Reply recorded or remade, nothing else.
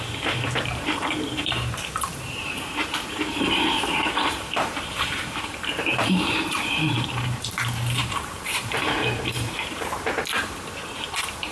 remade